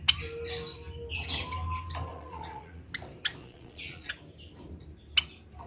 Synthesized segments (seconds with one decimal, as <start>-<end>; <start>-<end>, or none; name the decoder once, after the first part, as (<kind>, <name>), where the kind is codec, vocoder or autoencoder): 2.1-2.8 (vocoder, Vocos); 3.4-4.1